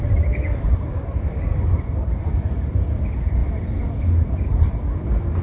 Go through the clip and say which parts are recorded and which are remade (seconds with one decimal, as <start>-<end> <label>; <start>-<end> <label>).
0.0-5.4 remade